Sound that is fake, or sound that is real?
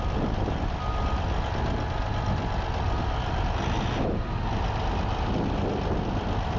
real